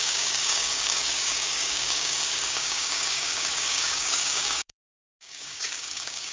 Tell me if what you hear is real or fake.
fake